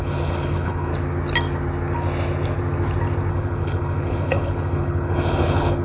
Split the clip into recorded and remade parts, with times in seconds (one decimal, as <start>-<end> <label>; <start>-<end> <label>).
0.0-0.9 remade; 0.9-3.3 recorded; 3.3-5.8 remade